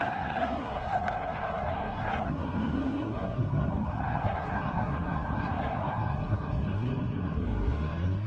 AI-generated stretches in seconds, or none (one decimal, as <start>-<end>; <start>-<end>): 0.0-8.3